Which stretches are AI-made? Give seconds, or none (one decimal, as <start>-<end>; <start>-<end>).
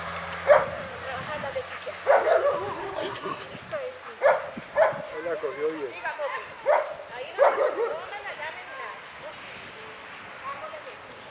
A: 2.8-3.4